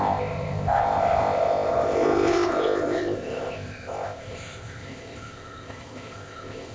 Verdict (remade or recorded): remade